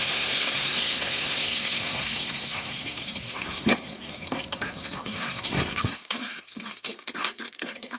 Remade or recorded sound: remade